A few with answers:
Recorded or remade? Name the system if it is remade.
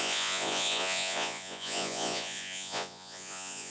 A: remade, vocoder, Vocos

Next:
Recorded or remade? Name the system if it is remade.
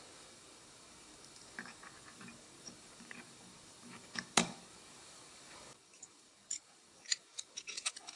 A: remade, codec, DAC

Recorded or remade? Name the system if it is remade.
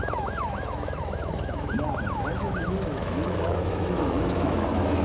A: remade, autoencoder, DAC-VAE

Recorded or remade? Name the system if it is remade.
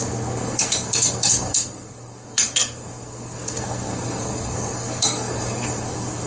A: remade, codec, SNAC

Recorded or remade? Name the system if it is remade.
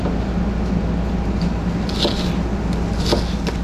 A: recorded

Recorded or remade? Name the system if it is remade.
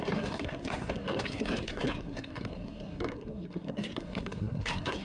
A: remade, codec, SNAC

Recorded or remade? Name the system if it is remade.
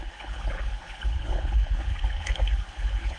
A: remade, codec, HILCodec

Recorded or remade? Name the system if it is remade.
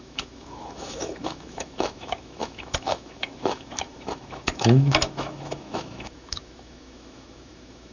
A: remade, autoencoder, DAC-VAE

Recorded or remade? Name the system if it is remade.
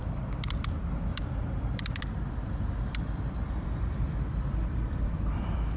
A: remade, vocoder, BigVGAN v2